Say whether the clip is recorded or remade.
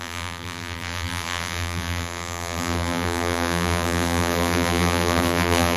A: remade